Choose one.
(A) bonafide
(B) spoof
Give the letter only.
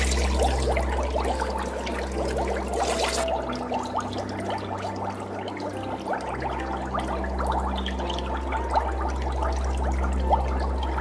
A